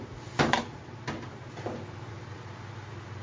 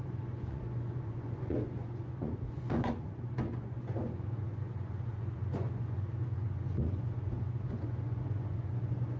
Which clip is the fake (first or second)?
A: second